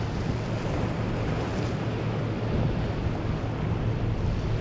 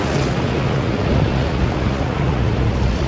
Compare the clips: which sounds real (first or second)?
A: first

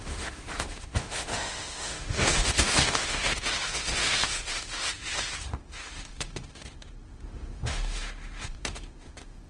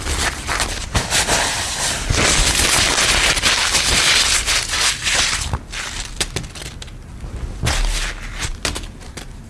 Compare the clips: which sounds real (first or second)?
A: second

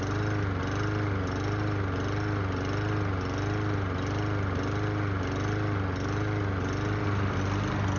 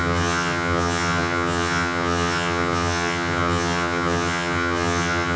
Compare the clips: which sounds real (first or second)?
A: first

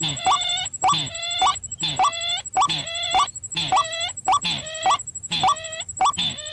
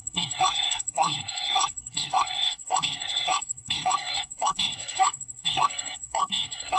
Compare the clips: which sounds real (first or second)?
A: first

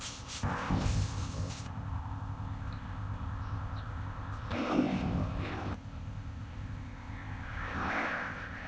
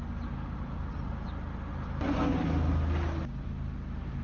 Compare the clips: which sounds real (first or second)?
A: second